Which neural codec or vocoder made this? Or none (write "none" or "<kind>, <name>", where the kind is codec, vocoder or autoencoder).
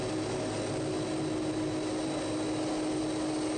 none